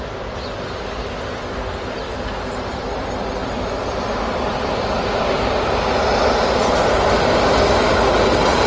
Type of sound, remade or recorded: recorded